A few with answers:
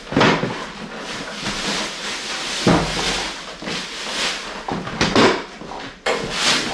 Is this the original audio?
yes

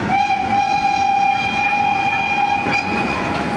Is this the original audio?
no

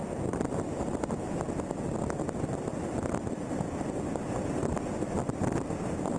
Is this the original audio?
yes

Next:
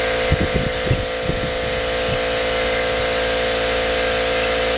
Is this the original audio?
yes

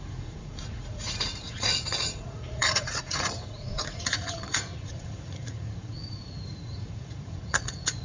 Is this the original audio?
no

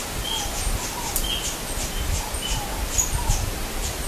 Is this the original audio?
yes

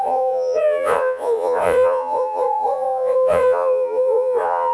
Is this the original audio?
no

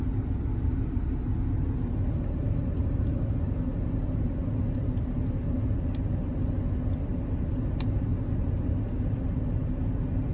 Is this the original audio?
yes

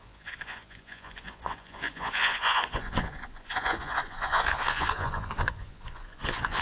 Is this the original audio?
no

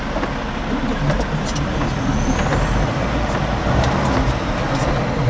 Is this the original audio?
yes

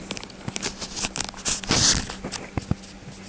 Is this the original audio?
yes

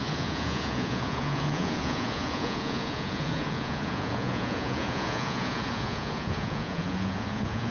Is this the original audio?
no